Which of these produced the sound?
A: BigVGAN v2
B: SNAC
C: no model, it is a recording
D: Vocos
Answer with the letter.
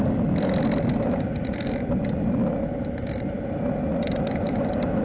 C